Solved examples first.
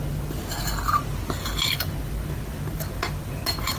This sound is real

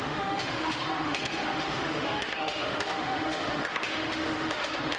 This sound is fake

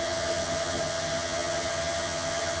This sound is fake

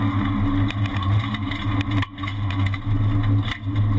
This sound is real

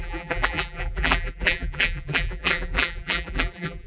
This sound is fake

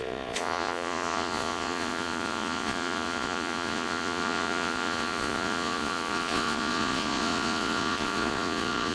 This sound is fake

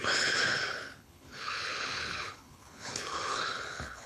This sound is fake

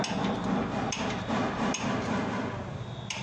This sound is real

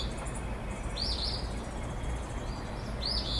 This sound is real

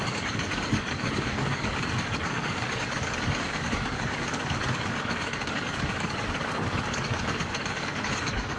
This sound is fake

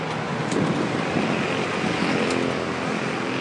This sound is real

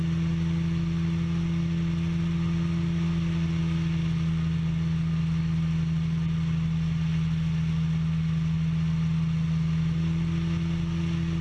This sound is real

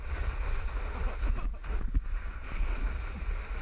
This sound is real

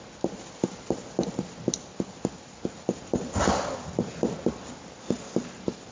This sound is real